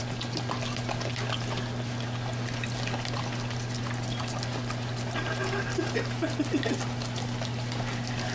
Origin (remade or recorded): recorded